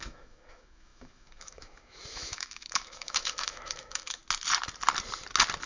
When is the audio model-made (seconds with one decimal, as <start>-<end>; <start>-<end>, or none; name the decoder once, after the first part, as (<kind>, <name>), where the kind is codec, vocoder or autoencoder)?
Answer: 0.0-4.2 (autoencoder, DAC-VAE)

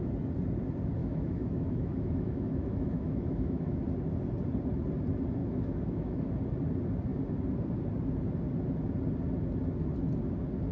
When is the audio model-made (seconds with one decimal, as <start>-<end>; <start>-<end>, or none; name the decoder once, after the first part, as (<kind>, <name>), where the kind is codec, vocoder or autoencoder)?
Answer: 1.0-3.8 (autoencoder, DAC-VAE); 5.4-6.3

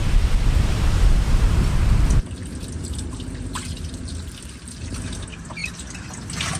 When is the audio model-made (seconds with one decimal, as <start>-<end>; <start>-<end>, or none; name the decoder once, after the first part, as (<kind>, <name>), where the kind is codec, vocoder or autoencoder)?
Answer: none

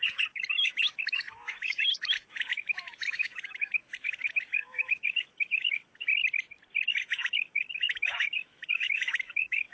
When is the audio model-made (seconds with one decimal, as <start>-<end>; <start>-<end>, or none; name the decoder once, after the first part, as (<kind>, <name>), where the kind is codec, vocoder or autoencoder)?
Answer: 0.0-6.1 (autoencoder, DAC-VAE); 7.0-9.7

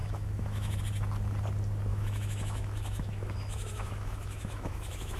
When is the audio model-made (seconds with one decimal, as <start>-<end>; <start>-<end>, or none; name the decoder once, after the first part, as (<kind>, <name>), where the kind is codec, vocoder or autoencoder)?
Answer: 0.0-0.8 (autoencoder, DAC-VAE); 1.9-5.2

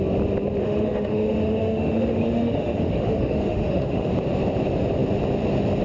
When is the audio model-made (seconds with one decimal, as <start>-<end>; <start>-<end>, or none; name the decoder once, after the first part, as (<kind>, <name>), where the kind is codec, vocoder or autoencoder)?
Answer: 0.6-4.1 (autoencoder, DAC-VAE)

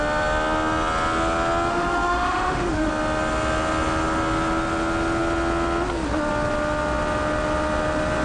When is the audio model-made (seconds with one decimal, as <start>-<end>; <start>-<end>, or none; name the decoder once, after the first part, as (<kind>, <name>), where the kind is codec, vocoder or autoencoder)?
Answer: 1.7-2.9 (autoencoder, DAC-VAE)

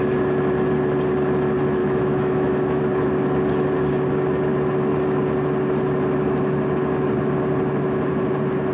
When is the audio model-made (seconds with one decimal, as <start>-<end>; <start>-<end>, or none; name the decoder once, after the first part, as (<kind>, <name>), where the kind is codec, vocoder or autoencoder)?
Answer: 1.8-2.8 (autoencoder, DAC-VAE)